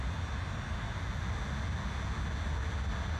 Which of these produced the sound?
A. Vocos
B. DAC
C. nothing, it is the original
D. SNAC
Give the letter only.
C